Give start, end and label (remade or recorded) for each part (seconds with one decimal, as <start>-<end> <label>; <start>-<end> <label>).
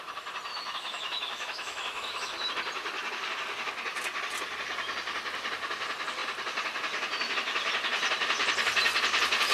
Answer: 0.0-0.5 recorded; 0.5-2.5 remade; 2.5-9.5 recorded